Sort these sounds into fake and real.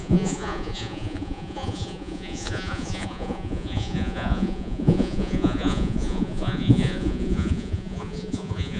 fake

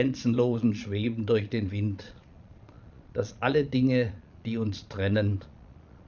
fake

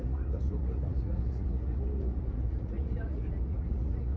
fake